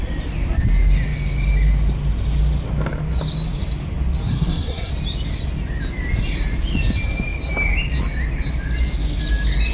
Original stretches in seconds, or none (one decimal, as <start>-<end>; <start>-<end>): 0.0-4.3; 4.9-9.7